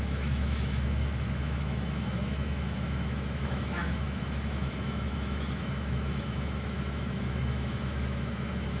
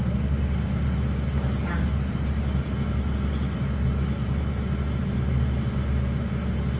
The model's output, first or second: first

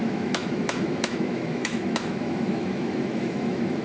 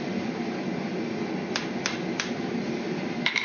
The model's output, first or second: first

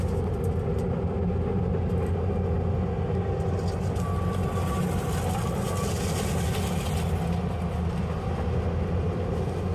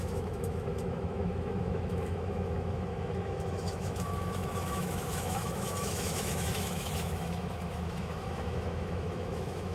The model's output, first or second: second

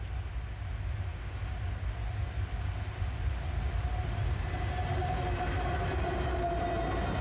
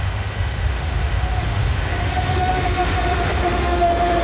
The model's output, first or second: second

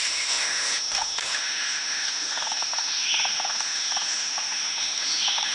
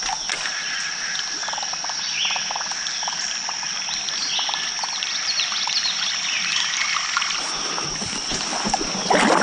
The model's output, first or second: first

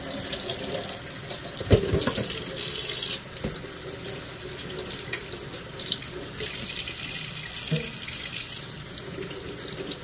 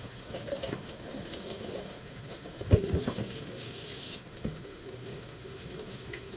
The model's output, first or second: second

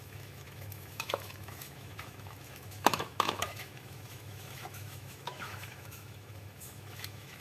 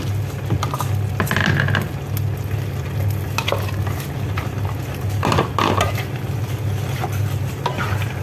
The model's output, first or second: first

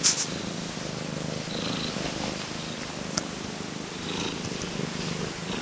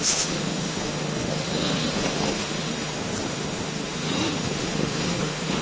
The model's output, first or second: second